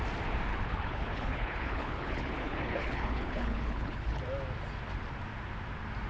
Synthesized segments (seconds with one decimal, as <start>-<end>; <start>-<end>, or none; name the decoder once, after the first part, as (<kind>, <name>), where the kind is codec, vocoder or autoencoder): 0.5-4.2 (codec, HILCodec)